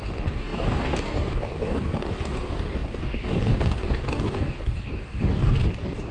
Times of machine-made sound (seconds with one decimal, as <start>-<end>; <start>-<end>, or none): 0.0-6.1